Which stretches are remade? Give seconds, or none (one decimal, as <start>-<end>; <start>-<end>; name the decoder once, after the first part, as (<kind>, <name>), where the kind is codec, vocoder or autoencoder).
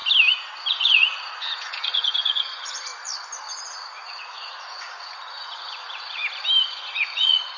0.7-2.9 (vocoder, Vocos); 3.7-6.2; 6.7-7.6